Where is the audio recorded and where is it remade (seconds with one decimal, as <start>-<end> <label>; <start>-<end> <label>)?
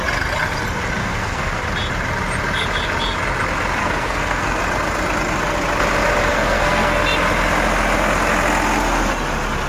0.0-1.0 recorded; 1.0-1.6 remade; 1.6-3.8 recorded; 3.8-4.6 remade; 4.6-6.3 recorded; 6.3-7.0 remade; 7.0-9.7 recorded